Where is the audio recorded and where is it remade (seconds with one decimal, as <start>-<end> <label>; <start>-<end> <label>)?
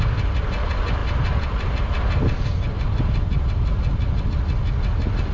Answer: 0.0-5.3 recorded